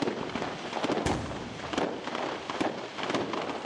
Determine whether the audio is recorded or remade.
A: recorded